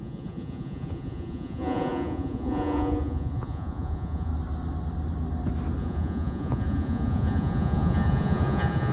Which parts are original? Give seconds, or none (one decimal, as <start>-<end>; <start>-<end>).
4.3-5.8